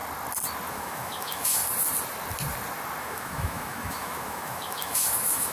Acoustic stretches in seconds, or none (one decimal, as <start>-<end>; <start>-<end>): 0.0-0.7; 1.6-3.0